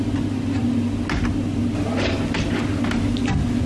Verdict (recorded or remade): recorded